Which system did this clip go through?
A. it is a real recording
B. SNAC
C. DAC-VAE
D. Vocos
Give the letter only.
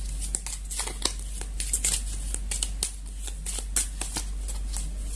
A